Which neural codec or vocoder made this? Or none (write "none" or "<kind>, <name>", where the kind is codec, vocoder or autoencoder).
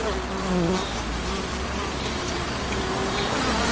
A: none